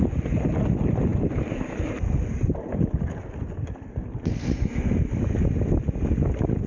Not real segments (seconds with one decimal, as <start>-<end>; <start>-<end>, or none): none